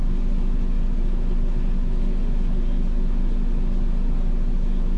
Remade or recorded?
recorded